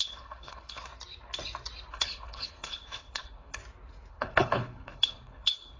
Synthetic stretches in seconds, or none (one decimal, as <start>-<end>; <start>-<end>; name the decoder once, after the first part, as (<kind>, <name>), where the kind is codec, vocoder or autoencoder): 0.0-0.9 (codec, HILCodec); 1.9-3.6; 4.1-5.8